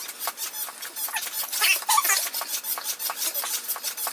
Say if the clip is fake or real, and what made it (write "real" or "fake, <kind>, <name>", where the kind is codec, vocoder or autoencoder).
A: real